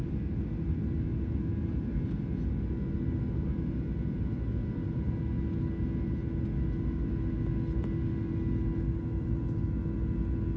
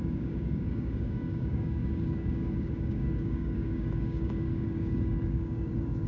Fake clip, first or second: second